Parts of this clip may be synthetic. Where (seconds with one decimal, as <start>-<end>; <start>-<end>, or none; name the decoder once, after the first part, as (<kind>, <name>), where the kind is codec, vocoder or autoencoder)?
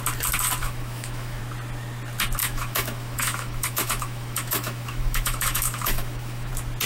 0.6-1.4 (autoencoder, DAC-VAE); 2.4-6.5